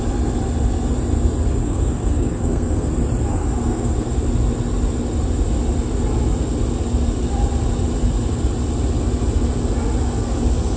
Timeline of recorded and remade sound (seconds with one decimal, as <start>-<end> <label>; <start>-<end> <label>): 0.0-1.6 recorded; 1.6-2.9 remade; 2.9-3.3 recorded; 3.3-4.2 remade; 4.2-10.8 recorded